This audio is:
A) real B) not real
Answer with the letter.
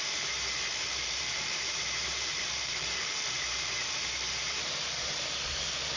B